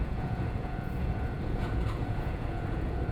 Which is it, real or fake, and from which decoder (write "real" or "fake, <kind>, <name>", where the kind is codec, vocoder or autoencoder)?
fake, vocoder, Vocos